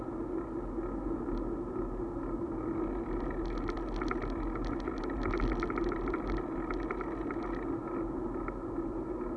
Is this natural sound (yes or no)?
yes